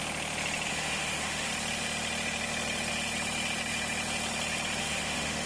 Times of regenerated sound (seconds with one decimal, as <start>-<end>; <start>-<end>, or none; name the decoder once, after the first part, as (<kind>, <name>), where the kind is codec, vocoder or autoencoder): 0.7-1.5 (autoencoder, DAC-VAE); 4.8-5.5